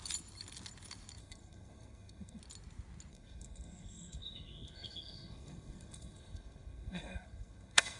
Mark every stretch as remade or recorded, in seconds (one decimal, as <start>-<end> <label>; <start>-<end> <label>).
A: 0.0-1.2 recorded; 1.2-2.4 remade; 2.4-3.1 recorded; 3.1-8.0 remade